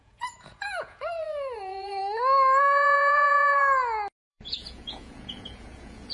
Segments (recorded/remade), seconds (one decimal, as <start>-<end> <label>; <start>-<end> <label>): 0.0-2.0 remade; 2.0-2.6 recorded; 2.6-3.6 remade; 3.6-4.3 recorded; 4.3-6.1 remade